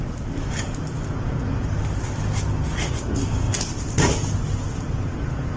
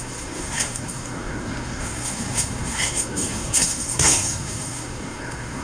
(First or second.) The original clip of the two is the first